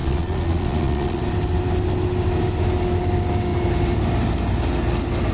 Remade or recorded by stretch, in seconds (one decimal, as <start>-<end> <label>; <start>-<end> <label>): 0.0-1.2 remade; 1.2-5.3 recorded